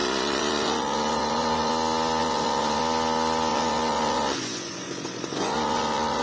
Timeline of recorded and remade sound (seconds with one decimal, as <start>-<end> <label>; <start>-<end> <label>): 0.0-1.7 remade; 1.7-2.2 recorded; 2.2-2.8 remade; 2.8-3.5 recorded; 3.5-6.2 remade

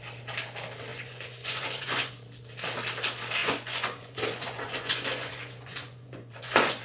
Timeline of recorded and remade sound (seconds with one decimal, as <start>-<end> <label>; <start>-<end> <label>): 0.0-0.9 recorded; 0.9-2.1 remade; 2.1-3.4 recorded; 3.4-6.8 remade

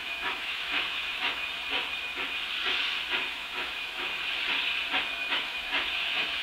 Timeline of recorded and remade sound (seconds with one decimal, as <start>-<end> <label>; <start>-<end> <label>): 0.0-1.4 remade; 1.4-3.3 recorded; 3.3-4.1 remade; 4.1-5.1 recorded; 5.1-6.4 remade